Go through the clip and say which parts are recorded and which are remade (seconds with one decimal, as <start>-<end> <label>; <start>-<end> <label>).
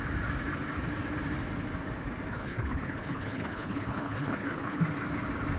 0.0-2.3 recorded; 2.3-4.8 remade; 4.8-5.6 recorded